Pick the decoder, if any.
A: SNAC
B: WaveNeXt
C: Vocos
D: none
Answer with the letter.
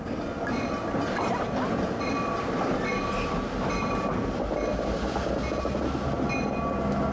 D